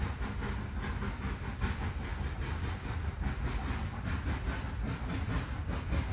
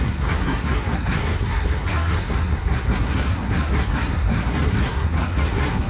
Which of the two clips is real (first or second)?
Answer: first